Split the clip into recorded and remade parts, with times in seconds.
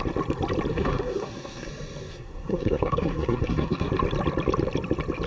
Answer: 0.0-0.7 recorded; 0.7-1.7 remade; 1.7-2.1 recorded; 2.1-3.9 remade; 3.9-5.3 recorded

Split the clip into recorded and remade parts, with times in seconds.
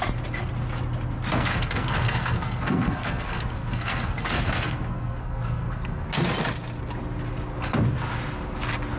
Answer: 0.0-1.3 recorded; 1.3-6.1 remade; 6.1-9.0 recorded